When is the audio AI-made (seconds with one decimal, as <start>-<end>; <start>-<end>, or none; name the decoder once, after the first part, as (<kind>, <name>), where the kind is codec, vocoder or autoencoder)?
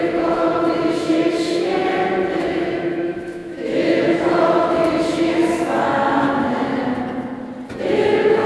0.0-1.8 (autoencoder, DAC-VAE); 2.4-6.7; 7.8-8.5